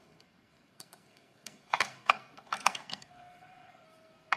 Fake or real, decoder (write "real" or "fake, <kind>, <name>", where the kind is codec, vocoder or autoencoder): fake, codec, SNAC